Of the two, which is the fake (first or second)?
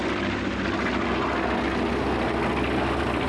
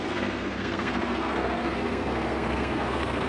second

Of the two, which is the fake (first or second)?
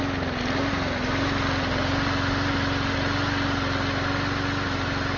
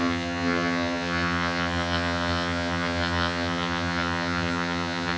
second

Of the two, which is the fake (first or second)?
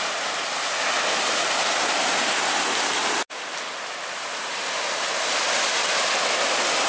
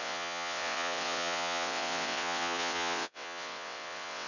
second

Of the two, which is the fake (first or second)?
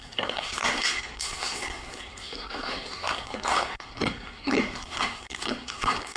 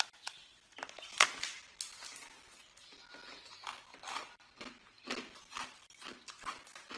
first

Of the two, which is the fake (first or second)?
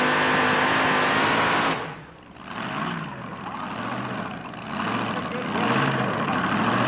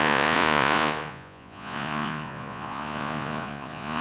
second